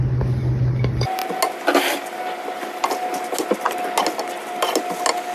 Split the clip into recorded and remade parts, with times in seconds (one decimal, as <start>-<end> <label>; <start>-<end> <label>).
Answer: 0.0-5.3 recorded